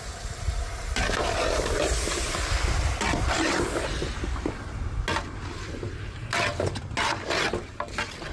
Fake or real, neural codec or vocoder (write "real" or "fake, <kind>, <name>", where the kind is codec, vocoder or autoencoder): real